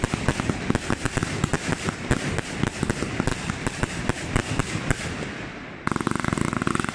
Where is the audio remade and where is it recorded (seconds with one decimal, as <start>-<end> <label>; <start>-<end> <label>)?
0.0-6.9 recorded